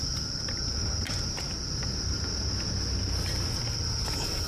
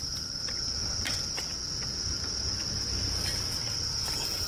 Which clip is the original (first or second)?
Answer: first